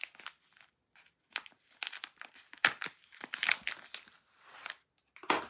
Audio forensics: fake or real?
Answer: real